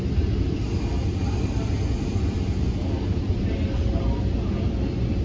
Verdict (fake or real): real